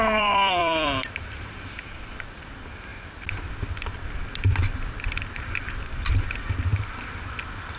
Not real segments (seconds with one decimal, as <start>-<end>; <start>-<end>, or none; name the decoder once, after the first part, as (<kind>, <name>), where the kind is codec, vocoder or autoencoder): 0.0-2.9 (vocoder, BigVGAN v2); 3.5-7.8